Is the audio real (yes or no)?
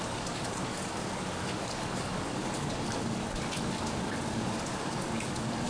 no